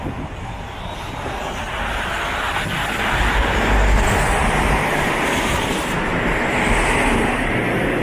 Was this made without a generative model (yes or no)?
yes